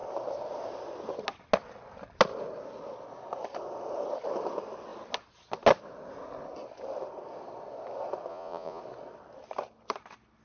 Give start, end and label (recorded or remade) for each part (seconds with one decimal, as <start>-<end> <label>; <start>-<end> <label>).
0.0-8.3 recorded; 8.3-8.8 remade; 8.8-10.4 recorded